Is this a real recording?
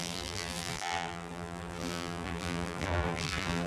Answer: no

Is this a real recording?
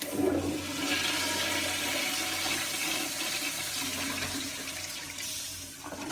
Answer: yes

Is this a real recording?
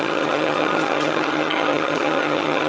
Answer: no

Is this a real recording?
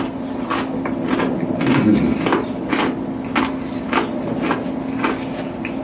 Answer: yes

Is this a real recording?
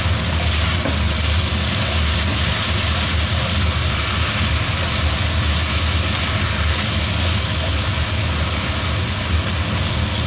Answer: yes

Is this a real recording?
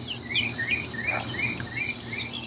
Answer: yes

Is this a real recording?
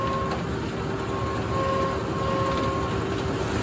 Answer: yes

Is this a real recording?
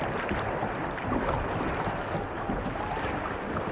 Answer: yes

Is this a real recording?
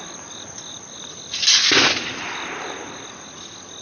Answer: yes